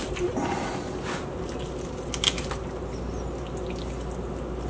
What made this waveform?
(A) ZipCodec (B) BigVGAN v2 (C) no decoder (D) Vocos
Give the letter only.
C